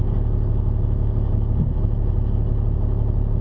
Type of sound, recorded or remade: recorded